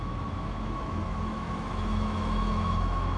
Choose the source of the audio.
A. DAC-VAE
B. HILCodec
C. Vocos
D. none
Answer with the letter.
A